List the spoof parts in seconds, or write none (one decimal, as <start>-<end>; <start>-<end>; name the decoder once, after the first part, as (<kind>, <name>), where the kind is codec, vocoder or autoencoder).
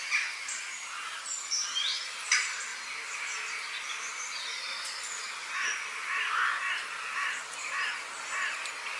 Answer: none